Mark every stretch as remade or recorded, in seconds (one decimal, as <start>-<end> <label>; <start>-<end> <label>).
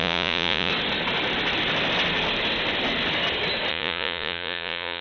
0.0-0.7 remade; 0.7-3.7 recorded; 3.7-5.0 remade